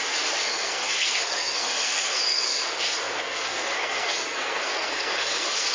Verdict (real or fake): fake